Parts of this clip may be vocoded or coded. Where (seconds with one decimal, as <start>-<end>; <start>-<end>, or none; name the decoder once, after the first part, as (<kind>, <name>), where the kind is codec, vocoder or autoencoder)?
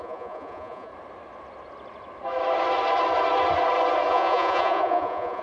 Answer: 0.0-0.9 (vocoder, Vocos); 4.1-5.4